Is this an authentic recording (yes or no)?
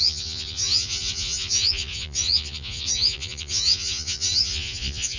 no